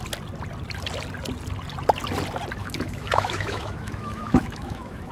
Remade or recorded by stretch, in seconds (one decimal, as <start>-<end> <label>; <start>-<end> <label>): 0.0-2.6 recorded; 2.6-5.1 remade